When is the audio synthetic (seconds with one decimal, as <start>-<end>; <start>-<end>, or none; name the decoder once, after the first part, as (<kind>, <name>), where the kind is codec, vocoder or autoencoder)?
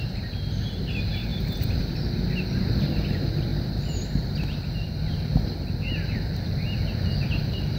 none